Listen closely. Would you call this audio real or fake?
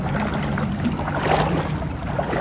real